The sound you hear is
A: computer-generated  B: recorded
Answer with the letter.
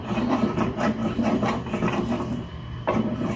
A